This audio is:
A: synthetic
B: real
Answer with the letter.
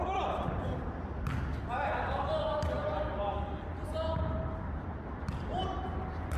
B